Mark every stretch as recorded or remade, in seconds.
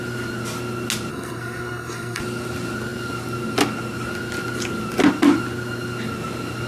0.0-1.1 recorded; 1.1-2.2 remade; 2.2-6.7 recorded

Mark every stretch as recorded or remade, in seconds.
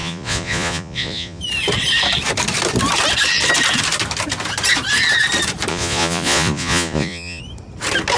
0.0-1.4 remade; 1.4-5.7 recorded; 5.7-7.4 remade; 7.4-8.2 recorded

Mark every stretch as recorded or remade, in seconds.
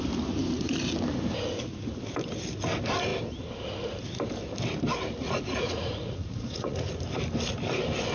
0.0-5.2 recorded; 5.2-6.9 remade; 6.9-8.1 recorded